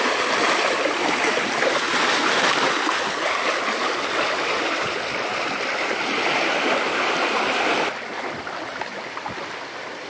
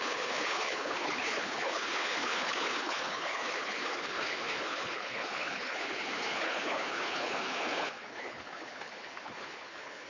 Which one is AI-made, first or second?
second